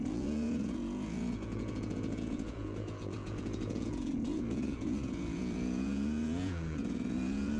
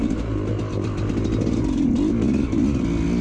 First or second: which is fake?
first